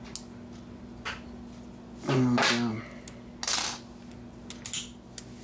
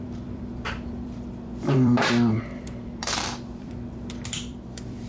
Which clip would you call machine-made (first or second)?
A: second